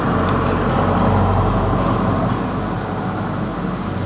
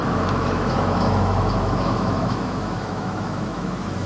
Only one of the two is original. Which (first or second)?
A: first